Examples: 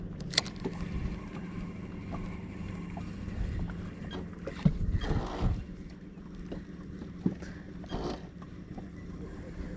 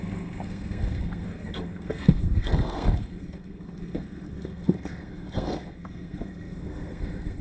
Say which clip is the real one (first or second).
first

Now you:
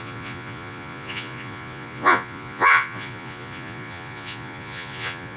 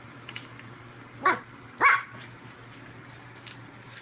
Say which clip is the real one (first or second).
second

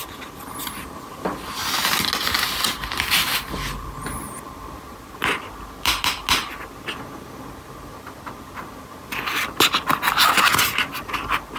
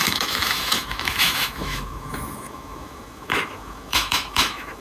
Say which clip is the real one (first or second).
first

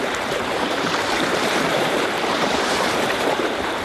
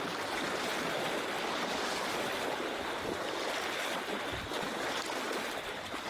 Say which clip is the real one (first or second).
second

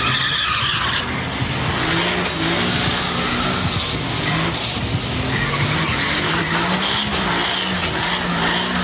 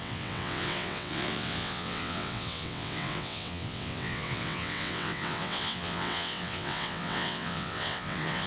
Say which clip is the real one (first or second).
first